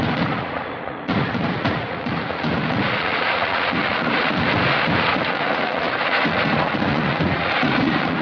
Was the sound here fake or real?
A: fake